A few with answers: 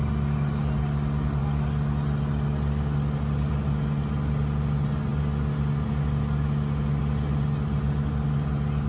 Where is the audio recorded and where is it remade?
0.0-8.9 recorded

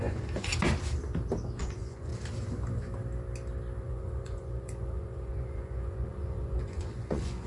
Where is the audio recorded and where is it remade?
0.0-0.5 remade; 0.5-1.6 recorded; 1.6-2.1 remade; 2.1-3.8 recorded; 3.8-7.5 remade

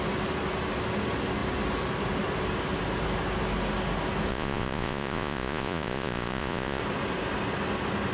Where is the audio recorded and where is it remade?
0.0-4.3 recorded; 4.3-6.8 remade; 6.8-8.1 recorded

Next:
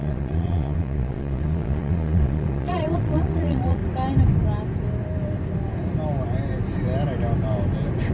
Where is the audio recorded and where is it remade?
0.0-3.8 remade; 3.8-8.1 recorded

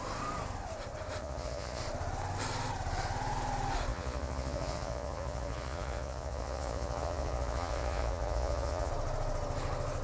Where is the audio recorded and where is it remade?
0.0-1.2 recorded; 1.2-1.8 remade; 1.8-3.9 recorded; 3.9-8.9 remade; 8.9-10.0 recorded

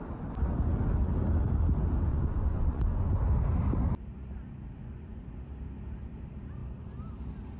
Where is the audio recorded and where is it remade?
0.0-2.1 recorded; 2.1-3.2 remade; 3.2-4.8 recorded; 4.8-5.3 remade; 5.3-7.6 recorded

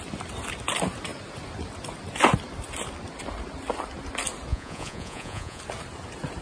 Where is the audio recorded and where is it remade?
0.0-4.5 recorded; 4.5-5.6 remade; 5.6-6.4 recorded

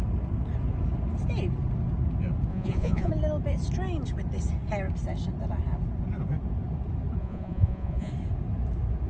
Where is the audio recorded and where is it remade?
0.0-2.5 recorded; 2.5-3.1 remade; 3.1-7.2 recorded; 7.2-8.1 remade; 8.1-9.1 recorded